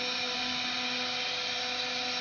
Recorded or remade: recorded